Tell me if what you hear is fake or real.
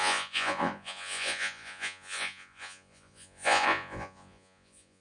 fake